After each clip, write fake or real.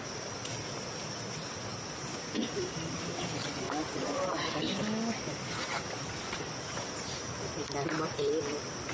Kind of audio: real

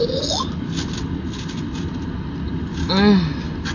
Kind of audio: real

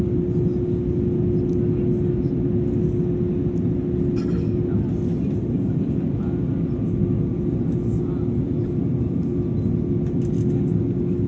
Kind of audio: real